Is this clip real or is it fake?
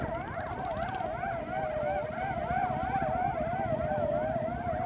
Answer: real